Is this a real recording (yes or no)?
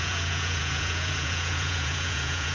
no